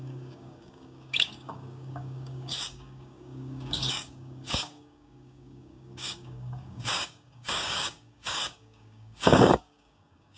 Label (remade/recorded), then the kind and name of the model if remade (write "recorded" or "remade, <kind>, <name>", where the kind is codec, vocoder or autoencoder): remade, codec, DAC